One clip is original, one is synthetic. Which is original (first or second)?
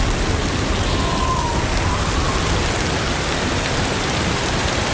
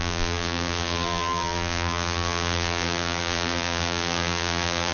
first